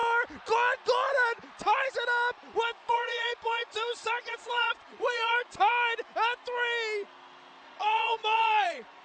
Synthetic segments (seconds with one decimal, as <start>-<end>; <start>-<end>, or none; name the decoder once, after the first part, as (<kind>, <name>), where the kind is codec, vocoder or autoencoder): 2.8-5.7 (vocoder, Vocos); 7.6-9.0